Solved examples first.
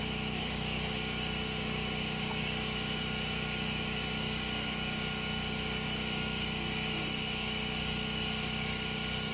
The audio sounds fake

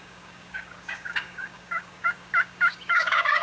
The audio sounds fake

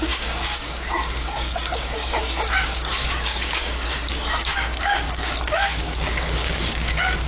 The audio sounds fake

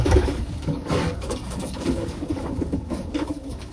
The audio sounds fake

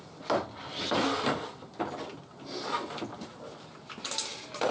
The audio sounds real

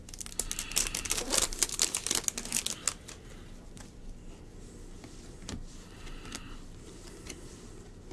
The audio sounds real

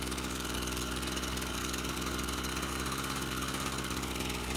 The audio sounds fake